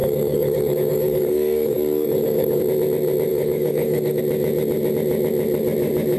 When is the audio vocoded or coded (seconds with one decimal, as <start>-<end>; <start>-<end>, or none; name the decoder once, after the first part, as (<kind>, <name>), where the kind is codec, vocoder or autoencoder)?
0.0-2.6 (codec, DAC); 3.3-4.2